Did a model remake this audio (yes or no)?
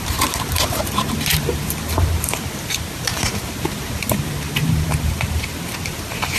yes